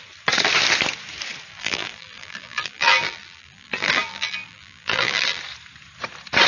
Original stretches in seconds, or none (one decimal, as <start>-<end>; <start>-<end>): 0.0-1.5; 5.4-6.5